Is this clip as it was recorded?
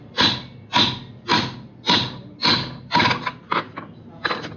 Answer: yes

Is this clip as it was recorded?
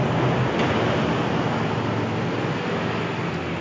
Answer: yes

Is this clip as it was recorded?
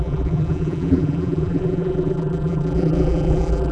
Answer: no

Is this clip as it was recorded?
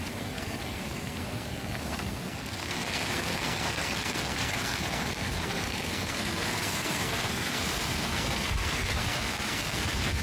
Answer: no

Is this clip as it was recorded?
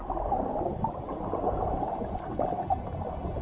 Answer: yes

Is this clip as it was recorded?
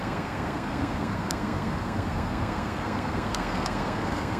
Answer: no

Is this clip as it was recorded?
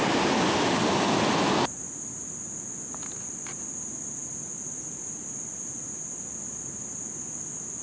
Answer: yes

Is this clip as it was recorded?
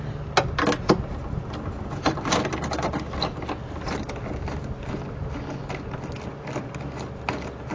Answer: yes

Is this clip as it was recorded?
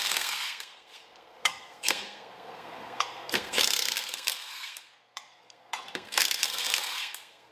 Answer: no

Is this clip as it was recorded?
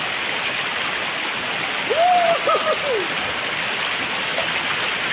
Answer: yes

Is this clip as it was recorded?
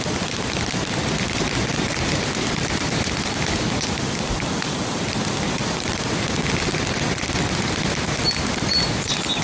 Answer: yes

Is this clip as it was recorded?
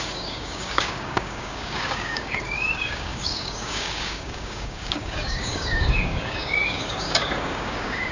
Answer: no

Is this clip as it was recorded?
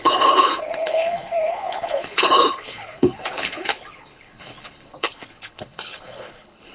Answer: no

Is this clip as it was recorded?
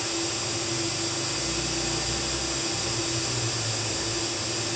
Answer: yes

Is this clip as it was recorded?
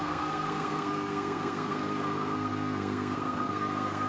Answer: no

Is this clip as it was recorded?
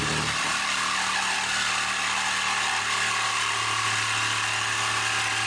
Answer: yes